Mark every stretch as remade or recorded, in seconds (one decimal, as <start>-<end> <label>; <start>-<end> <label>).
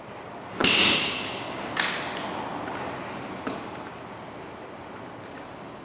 0.0-5.8 recorded